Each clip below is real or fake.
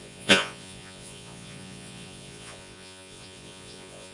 fake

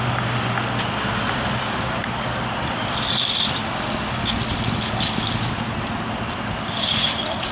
real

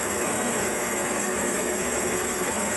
fake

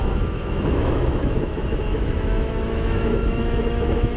fake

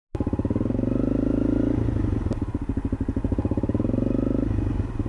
real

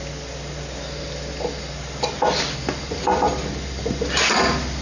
real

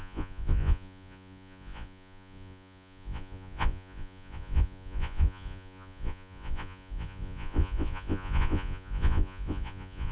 fake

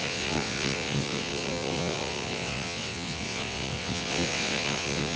fake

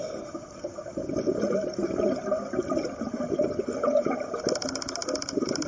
real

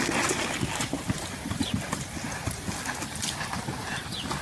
real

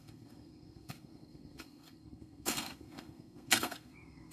fake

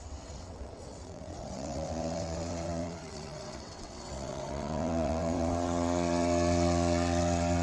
fake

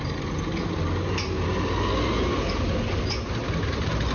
real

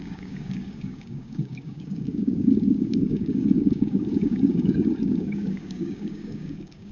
fake